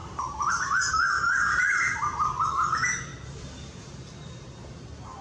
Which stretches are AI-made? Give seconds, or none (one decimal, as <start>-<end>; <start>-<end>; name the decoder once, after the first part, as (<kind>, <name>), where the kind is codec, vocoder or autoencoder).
0.9-1.5 (codec, DAC); 2.5-3.1